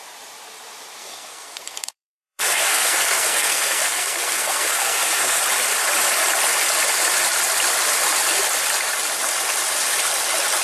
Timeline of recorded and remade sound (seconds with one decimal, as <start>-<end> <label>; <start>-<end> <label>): 0.0-1.0 recorded; 1.0-5.4 remade; 5.4-10.6 recorded